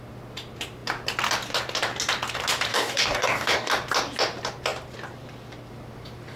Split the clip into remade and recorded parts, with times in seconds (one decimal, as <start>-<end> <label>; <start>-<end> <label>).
0.0-2.7 recorded; 2.7-3.7 remade; 3.7-6.4 recorded